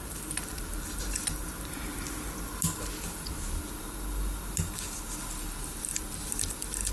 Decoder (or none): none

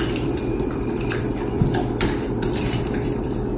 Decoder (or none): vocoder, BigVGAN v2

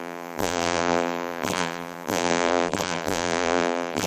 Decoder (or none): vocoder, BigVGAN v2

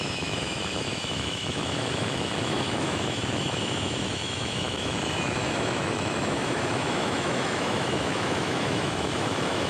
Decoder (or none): autoencoder, DAC-VAE